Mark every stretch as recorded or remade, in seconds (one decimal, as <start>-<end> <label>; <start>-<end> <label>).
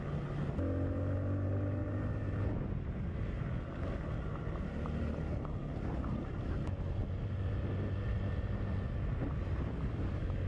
0.0-1.8 recorded; 1.8-2.5 remade; 2.5-10.5 recorded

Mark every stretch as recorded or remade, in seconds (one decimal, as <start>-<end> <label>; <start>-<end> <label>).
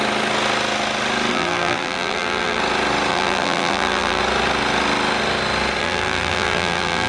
0.0-1.3 recorded; 1.3-2.6 remade; 2.6-3.1 recorded; 3.1-4.2 remade; 4.2-5.8 recorded; 5.8-7.1 remade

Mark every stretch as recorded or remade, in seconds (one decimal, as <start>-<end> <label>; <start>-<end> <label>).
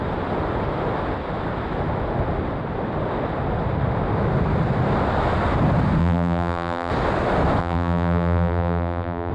0.0-6.0 recorded; 6.0-6.9 remade; 6.9-7.6 recorded; 7.6-9.3 remade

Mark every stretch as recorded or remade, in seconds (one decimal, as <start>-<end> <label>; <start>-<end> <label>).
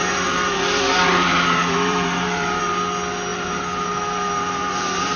0.0-2.6 remade; 2.6-3.3 recorded; 3.3-5.2 remade